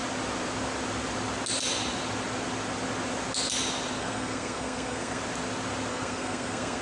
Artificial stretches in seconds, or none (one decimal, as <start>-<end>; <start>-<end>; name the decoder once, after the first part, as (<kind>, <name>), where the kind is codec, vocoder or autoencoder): 4.0-5.2 (codec, SNAC); 5.9-6.8